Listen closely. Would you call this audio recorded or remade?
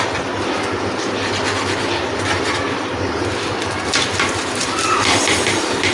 recorded